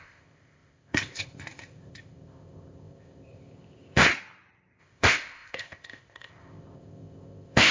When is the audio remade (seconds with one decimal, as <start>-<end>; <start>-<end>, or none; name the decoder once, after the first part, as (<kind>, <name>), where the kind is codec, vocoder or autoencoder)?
0.0-4.1 (codec, ZipCodec); 4.8-7.7